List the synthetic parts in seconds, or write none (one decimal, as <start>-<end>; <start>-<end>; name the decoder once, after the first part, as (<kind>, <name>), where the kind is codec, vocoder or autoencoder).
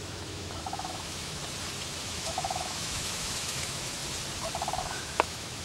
0.0-1.4 (autoencoder, DAC-VAE); 2.0-4.0; 4.8-5.6